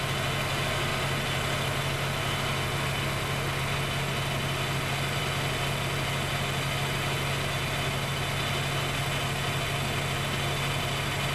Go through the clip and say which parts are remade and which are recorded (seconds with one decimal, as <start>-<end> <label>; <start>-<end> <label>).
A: 0.0-11.3 recorded